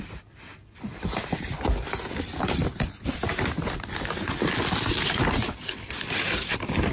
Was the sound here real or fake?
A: fake